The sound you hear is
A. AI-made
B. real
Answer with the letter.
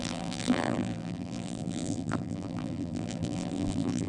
A